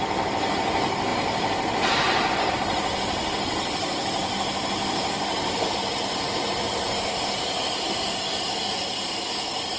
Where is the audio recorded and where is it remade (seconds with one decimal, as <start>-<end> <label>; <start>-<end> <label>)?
0.0-1.1 recorded; 1.1-2.5 remade; 2.5-4.2 recorded; 4.2-9.2 remade; 9.2-9.8 recorded